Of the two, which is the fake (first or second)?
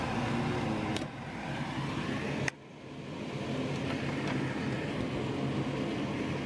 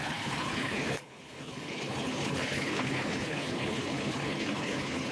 second